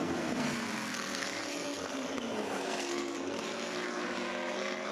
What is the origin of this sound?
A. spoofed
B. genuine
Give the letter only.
A